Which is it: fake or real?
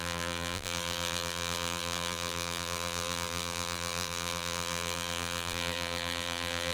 fake